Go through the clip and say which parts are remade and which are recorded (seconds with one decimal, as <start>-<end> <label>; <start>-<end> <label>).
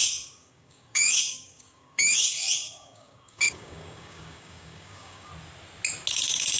0.0-5.3 remade; 5.3-6.1 recorded; 6.1-6.6 remade